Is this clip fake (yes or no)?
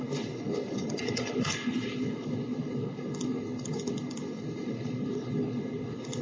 yes